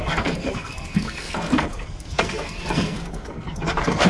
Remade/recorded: remade